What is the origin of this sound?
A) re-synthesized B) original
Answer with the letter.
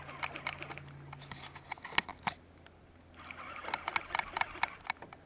B